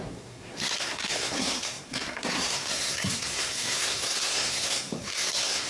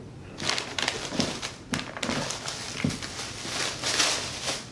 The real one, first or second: second